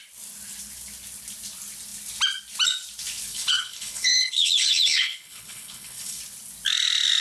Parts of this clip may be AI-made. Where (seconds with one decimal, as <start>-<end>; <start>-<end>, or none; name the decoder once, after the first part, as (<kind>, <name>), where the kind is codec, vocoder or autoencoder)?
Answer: 3.3-6.2 (codec, HILCodec)